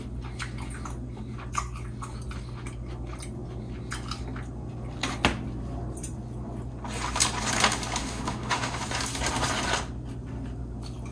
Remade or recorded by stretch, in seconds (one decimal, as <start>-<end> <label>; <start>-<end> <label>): 0.0-8.0 recorded; 8.0-8.8 remade; 8.8-11.1 recorded